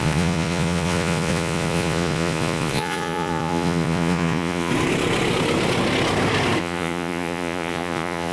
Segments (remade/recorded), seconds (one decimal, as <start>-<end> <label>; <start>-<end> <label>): 0.0-4.7 remade; 4.7-6.6 recorded; 6.6-8.3 remade